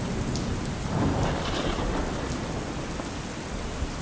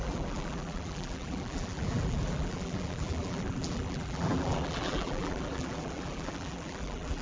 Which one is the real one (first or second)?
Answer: first